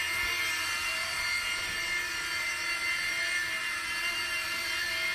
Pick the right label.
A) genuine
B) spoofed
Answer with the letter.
A